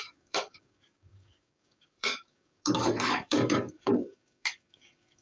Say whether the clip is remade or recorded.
remade